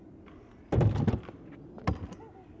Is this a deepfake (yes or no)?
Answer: no